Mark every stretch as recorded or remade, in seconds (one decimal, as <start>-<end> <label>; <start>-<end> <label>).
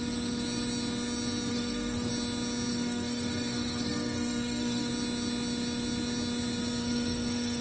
0.0-1.5 recorded; 1.5-2.1 remade; 2.1-2.7 recorded; 2.7-4.9 remade; 4.9-6.8 recorded; 6.8-7.6 remade